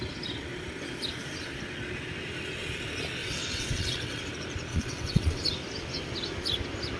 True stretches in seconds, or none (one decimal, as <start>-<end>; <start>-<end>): 0.0-3.2; 4.2-4.7; 5.4-7.0